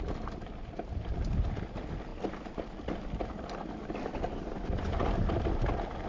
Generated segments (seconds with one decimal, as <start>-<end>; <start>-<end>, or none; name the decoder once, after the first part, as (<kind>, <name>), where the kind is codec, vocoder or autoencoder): none